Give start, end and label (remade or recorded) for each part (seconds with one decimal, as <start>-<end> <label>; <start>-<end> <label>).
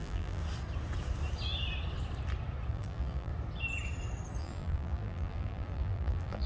0.0-0.4 remade; 0.4-2.7 recorded; 2.7-3.3 remade; 3.3-4.4 recorded; 4.4-6.5 remade